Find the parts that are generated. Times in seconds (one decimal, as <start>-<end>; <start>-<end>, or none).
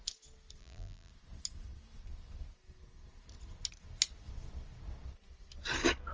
0.6-1.1